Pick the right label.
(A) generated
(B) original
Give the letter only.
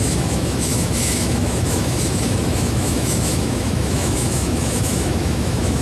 A